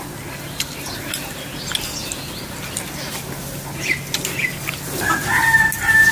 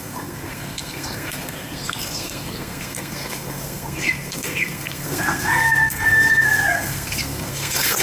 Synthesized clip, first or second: second